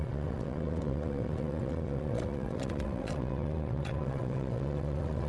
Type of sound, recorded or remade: remade